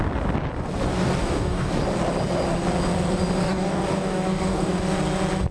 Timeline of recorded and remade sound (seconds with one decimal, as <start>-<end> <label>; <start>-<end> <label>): 0.0-1.2 recorded; 1.2-1.7 remade; 1.7-3.4 recorded; 3.4-4.8 remade; 4.8-5.5 recorded